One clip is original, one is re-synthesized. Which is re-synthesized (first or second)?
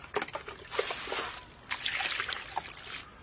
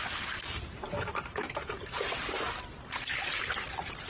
second